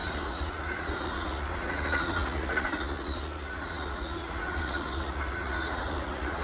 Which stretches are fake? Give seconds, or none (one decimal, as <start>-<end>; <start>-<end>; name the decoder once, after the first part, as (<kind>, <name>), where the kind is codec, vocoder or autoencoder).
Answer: 0.0-6.4 (vocoder, Vocos)